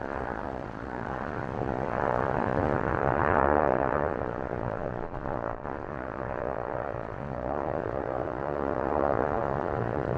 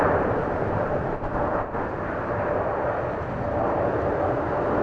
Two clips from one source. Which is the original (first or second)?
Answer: second